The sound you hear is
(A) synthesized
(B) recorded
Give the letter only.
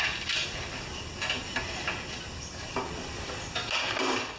A